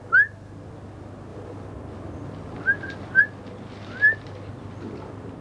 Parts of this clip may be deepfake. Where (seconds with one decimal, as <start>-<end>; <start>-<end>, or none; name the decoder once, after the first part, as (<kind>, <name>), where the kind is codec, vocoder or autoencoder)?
none